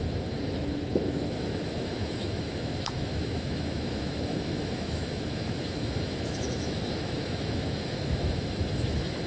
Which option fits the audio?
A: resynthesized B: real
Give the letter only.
A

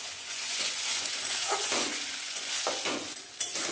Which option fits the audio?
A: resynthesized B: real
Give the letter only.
A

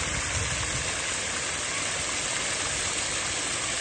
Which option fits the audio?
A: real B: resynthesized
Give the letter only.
A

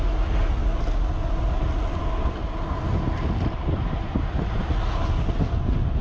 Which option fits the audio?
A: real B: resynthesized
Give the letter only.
A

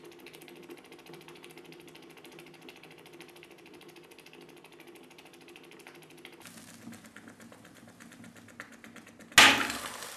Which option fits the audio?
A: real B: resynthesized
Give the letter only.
A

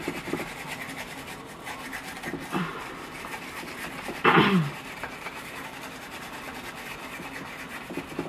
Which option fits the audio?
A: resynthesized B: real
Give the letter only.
B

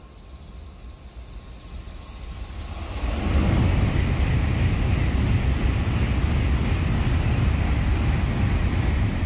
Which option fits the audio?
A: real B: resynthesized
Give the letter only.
A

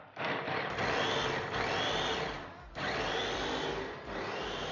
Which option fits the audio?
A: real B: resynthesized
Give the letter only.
A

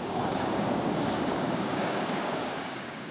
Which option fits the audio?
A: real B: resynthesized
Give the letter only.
B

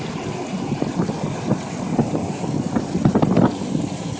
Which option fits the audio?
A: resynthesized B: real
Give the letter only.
B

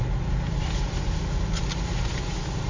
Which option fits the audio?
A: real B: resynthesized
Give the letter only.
A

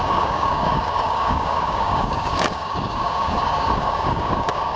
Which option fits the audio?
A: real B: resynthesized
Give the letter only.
B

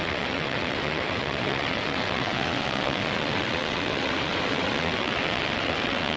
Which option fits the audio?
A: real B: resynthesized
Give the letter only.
B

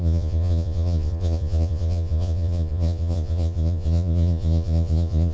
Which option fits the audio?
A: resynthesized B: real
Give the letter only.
A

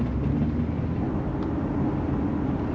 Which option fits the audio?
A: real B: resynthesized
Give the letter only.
A